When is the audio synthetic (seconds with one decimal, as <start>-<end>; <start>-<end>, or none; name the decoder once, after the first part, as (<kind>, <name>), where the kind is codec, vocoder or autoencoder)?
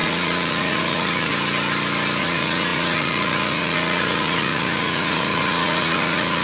0.0-1.3 (vocoder, Vocos); 2.2-6.4